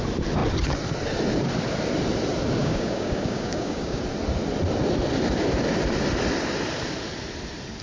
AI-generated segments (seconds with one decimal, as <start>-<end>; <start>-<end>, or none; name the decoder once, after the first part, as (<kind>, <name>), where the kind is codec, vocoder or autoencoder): 2.6-4.0 (codec, DAC)